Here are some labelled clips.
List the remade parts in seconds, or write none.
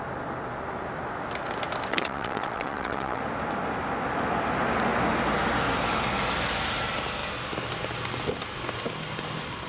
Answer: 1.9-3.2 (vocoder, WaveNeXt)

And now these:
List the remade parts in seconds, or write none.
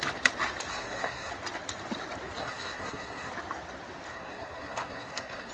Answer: 0.7-1.3 (codec, SNAC); 2.4-3.3; 4.1-5.5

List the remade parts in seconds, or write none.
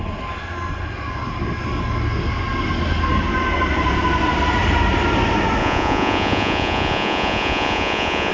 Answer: 5.6-8.3 (vocoder, Vocos)